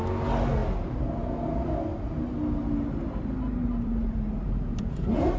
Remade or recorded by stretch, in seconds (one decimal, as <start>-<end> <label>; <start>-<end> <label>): 0.0-3.6 recorded; 3.6-4.9 remade; 4.9-5.4 recorded